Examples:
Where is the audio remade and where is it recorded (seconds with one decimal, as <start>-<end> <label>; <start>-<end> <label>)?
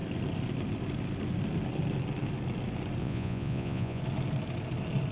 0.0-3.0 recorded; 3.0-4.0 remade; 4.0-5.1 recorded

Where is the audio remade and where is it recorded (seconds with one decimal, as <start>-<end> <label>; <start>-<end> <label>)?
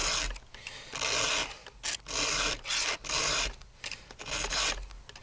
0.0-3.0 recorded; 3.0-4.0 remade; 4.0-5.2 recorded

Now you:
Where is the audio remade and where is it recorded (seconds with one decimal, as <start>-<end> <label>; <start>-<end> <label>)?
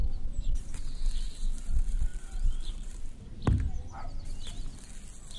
0.0-0.7 remade; 0.7-2.1 recorded; 2.1-3.0 remade; 3.0-5.4 recorded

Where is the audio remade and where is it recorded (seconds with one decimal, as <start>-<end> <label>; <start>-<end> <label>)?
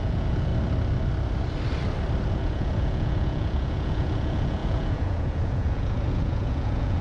0.0-0.5 remade; 0.5-2.3 recorded; 2.3-7.0 remade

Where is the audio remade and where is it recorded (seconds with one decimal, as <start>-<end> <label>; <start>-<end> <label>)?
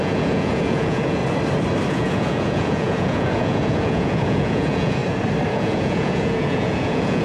0.0-1.2 remade; 1.2-1.9 recorded; 1.9-5.0 remade; 5.0-5.5 recorded; 5.5-7.2 remade